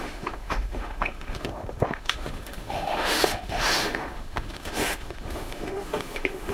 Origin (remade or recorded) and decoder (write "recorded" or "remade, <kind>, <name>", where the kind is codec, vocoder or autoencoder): remade, autoencoder, DAC-VAE